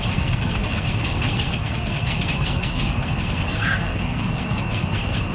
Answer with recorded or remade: remade